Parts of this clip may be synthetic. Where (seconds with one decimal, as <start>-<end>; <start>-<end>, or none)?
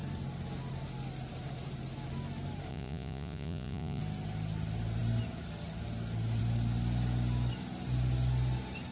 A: 2.7-4.0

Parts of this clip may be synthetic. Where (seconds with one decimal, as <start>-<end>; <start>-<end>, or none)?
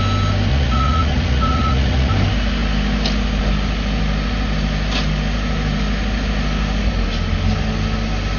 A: 0.5-2.1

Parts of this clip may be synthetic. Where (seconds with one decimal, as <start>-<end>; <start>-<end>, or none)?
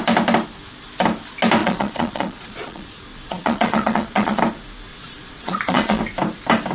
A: 1.6-4.4; 4.9-6.0